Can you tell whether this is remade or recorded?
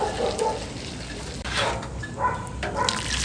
recorded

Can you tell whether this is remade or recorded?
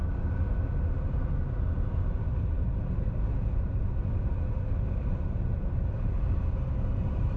recorded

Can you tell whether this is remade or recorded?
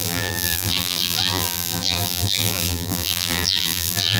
remade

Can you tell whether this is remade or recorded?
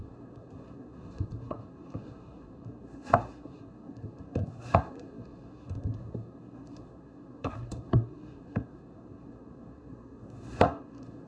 remade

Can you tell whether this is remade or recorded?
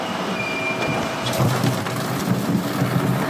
recorded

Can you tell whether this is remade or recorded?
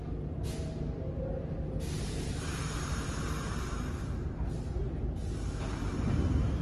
remade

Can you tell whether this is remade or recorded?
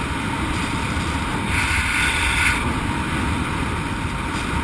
recorded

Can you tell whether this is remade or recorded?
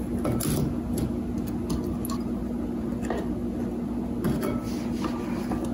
recorded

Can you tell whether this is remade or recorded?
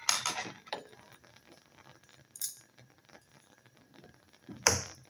remade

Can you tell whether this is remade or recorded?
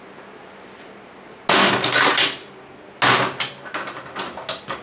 recorded